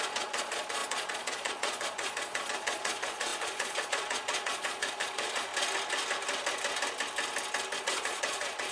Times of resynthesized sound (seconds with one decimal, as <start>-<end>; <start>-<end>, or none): 0.0-5.5; 7.8-8.7

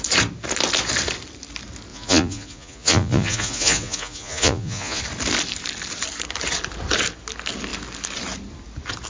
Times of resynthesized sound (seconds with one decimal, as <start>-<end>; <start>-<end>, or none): 1.9-5.0

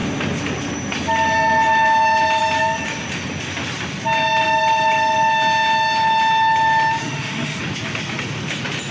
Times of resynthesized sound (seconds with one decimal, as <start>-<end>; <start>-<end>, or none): 7.0-7.6

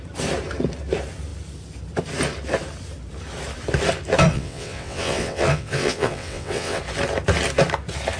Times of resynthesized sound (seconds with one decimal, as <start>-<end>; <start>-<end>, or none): 4.3-6.8

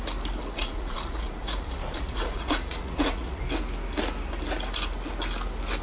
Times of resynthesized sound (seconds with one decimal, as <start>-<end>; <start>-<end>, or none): 0.4-3.4

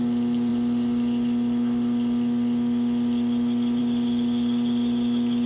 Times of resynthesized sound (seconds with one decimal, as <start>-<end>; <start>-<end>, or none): none

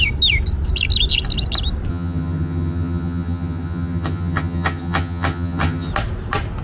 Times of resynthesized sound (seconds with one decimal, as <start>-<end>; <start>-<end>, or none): 1.9-5.9

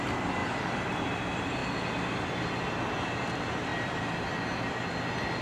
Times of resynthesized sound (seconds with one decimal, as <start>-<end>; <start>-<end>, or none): 0.4-1.2; 3.7-4.3